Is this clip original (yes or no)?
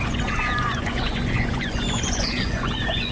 no